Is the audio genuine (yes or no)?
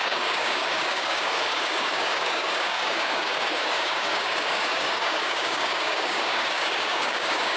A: no